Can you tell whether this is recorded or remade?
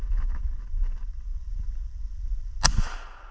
recorded